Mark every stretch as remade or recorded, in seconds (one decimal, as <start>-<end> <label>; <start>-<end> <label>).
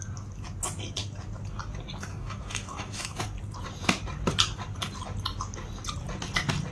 0.0-2.1 recorded; 2.1-3.2 remade; 3.2-6.7 recorded